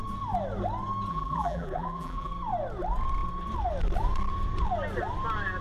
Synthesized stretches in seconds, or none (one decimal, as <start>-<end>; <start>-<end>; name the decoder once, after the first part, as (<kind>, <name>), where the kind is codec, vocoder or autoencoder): 1.1-2.3 (vocoder, BigVGAN v2)